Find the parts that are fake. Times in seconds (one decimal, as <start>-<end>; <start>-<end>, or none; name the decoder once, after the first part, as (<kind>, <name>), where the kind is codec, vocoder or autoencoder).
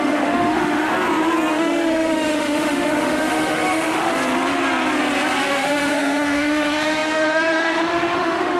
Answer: 0.0-0.9 (autoencoder, DAC-VAE); 1.5-4.1; 5.5-8.6